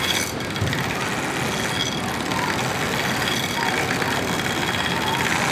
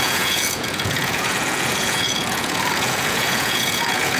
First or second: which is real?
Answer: first